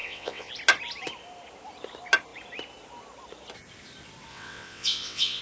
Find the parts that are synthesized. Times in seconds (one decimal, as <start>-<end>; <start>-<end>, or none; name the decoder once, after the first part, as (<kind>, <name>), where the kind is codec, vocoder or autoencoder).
0.0-0.5 (vocoder, WaveNeXt); 4.3-5.4